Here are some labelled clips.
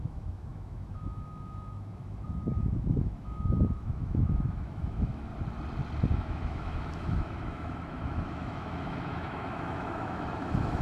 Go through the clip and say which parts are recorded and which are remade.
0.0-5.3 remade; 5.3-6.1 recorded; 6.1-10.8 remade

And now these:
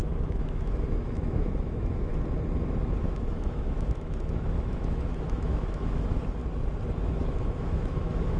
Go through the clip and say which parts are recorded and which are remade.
0.0-2.1 remade; 2.1-3.0 recorded; 3.0-6.4 remade; 6.4-7.0 recorded; 7.0-8.4 remade

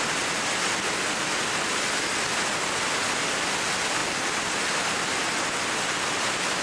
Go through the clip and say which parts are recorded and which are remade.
0.0-6.6 recorded

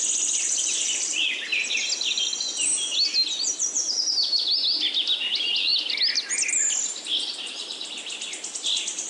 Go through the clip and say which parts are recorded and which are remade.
0.0-9.1 recorded